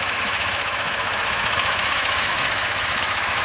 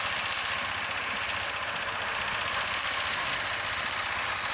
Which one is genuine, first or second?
second